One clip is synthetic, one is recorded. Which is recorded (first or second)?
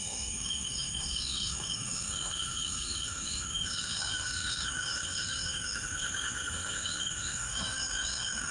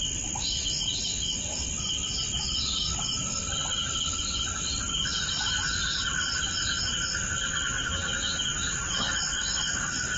second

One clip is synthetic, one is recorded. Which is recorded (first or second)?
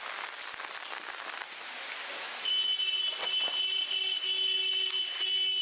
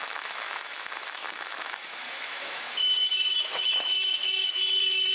first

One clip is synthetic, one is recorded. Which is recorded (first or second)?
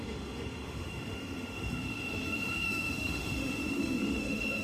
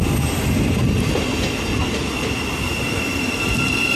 second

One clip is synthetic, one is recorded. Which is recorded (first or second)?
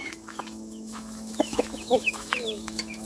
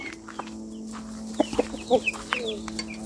second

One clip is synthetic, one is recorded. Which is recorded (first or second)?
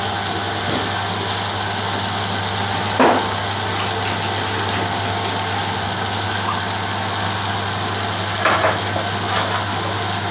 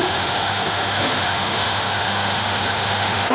first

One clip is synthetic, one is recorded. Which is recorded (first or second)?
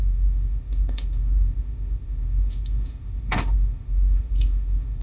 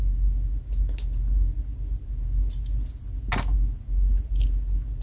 second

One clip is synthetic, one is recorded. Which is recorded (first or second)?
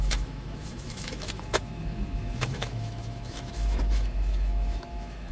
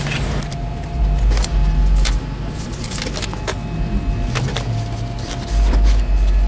second